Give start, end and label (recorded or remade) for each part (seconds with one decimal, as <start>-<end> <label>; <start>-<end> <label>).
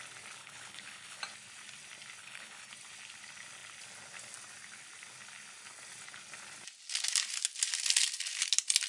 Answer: 0.0-0.4 recorded; 0.4-1.2 remade; 1.2-2.2 recorded; 2.2-2.7 remade; 2.7-8.9 recorded